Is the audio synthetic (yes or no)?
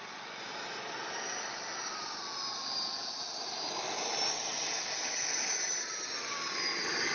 no